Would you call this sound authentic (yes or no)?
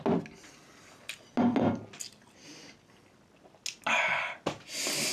yes